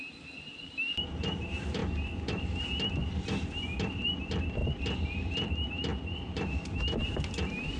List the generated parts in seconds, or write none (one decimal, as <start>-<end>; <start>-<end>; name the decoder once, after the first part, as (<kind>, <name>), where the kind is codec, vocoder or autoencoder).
0.0-7.8 (vocoder, BigVGAN v2)